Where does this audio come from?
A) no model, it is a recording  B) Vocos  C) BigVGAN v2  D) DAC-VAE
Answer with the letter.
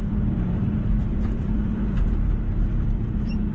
C